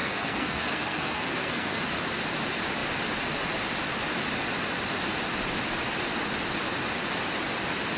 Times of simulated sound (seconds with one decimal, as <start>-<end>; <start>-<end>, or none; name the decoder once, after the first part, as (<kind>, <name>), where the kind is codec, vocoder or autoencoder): 0.0-1.8 (codec, SNAC)